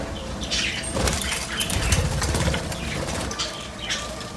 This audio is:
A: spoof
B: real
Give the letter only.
A